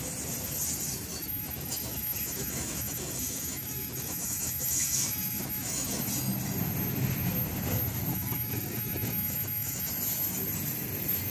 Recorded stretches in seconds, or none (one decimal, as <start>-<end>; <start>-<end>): 0.0-1.1; 6.0-8.1; 9.9-11.3